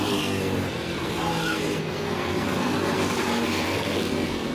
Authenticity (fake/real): fake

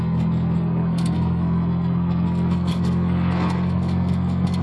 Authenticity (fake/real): fake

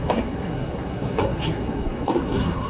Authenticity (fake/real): fake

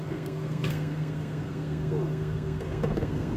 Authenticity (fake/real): fake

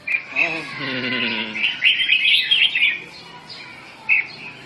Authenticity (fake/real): real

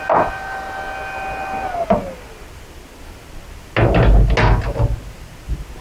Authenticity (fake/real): real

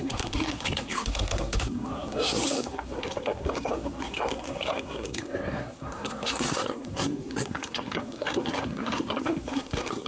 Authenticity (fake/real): fake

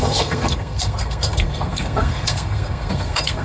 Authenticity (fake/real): fake